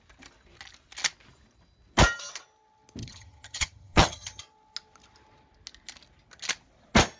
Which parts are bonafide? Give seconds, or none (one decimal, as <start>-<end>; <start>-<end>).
0.0-3.0; 4.4-7.2